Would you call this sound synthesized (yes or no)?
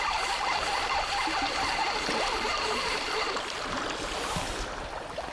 no